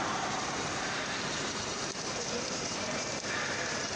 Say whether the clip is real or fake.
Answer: fake